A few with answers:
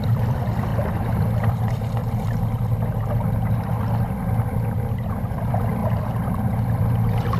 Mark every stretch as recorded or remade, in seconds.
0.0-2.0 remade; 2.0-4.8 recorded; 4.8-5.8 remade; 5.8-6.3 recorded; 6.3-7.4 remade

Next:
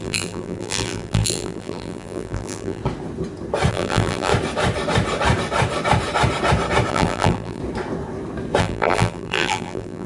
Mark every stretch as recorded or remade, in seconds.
0.0-2.8 remade; 2.8-3.7 recorded; 3.7-4.3 remade; 4.3-6.9 recorded; 6.9-7.6 remade; 7.6-8.6 recorded; 8.6-10.1 remade

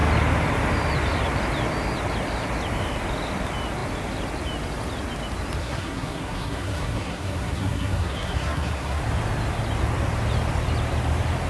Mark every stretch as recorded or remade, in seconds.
0.0-5.6 recorded; 5.6-9.0 remade; 9.0-11.5 recorded

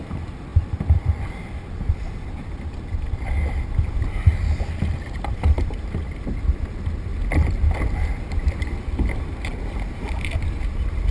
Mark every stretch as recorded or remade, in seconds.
0.0-11.1 recorded